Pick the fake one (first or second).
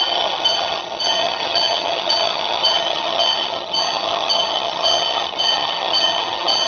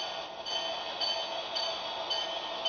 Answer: first